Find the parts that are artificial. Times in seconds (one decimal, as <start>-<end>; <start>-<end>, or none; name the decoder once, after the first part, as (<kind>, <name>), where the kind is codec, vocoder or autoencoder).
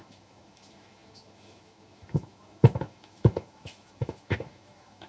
0.0-5.1 (autoencoder, DAC-VAE)